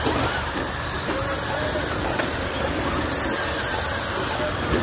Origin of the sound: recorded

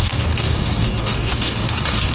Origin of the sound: remade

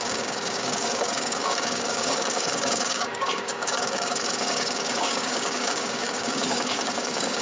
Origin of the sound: remade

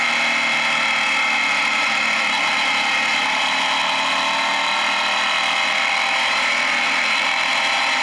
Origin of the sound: recorded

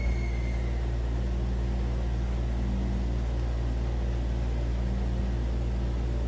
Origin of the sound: recorded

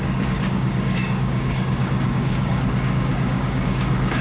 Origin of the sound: remade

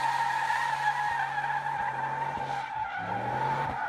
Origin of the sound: recorded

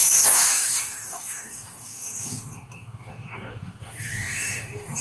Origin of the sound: remade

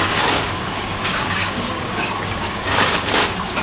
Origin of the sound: remade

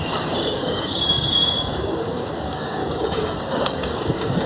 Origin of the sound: remade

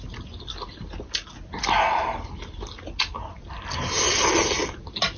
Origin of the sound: recorded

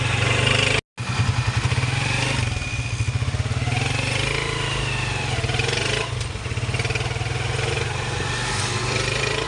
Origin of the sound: recorded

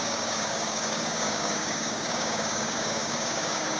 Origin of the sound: remade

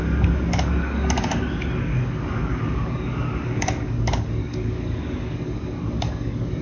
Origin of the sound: remade